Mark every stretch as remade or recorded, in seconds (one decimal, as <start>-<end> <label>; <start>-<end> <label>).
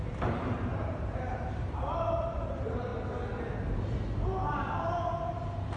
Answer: 0.0-2.9 remade; 2.9-5.8 recorded